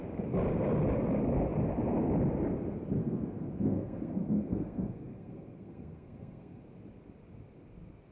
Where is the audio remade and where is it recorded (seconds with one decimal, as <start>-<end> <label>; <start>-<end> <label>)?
0.0-3.0 recorded; 3.0-6.6 remade; 6.6-8.1 recorded

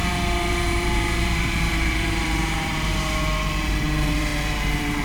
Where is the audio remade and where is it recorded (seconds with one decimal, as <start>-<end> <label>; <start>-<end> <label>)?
0.0-5.0 remade

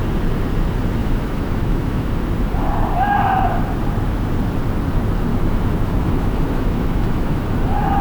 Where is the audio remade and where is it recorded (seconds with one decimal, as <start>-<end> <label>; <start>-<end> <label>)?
0.0-1.0 recorded; 1.0-2.1 remade; 2.1-5.3 recorded; 5.3-7.4 remade; 7.4-8.0 recorded

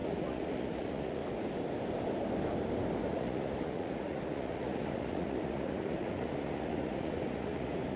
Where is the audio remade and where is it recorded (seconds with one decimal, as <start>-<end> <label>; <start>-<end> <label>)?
0.0-1.2 remade; 1.2-3.1 recorded; 3.1-8.0 remade

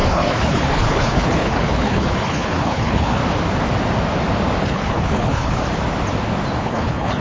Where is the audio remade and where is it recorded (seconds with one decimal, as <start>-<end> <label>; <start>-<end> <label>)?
0.0-3.2 remade; 3.2-4.6 recorded; 4.6-5.6 remade; 5.6-6.6 recorded; 6.6-7.2 remade

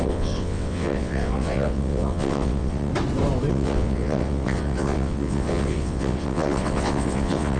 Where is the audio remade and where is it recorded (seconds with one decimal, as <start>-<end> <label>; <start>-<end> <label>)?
0.0-2.9 remade; 2.9-3.5 recorded; 3.5-7.6 remade

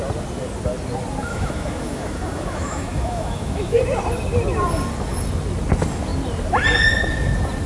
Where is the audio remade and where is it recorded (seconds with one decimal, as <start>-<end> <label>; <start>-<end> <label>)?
0.0-1.2 recorded; 1.2-3.8 remade; 3.8-7.7 recorded